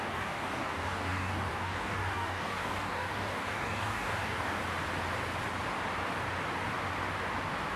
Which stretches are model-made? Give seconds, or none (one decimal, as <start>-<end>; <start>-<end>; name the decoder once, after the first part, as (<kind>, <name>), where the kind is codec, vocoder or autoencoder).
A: 0.0-4.6 (codec, DAC)